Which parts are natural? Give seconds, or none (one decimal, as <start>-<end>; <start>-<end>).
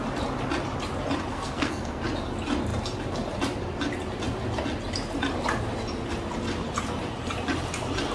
0.0-1.3; 2.0-8.1